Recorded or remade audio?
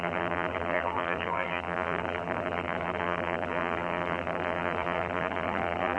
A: remade